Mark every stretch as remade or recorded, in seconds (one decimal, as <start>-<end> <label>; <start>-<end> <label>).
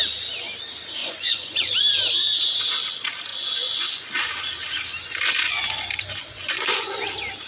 0.0-1.0 recorded; 1.0-1.7 remade; 1.7-3.3 recorded; 3.3-4.1 remade; 4.1-5.0 recorded; 5.0-5.6 remade; 5.6-6.2 recorded; 6.2-7.0 remade; 7.0-7.5 recorded